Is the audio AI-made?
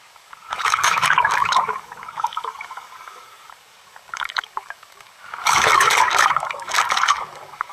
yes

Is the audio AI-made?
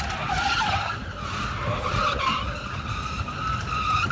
no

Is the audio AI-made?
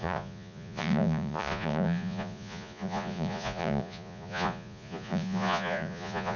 yes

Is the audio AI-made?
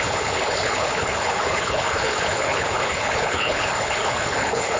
yes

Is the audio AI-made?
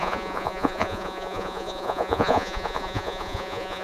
yes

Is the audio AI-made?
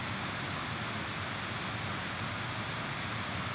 no